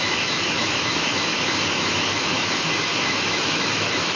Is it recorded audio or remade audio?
remade